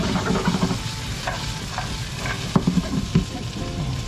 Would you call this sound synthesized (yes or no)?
no